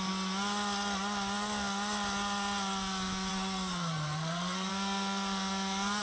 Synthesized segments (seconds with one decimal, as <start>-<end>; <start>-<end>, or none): 3.3-4.7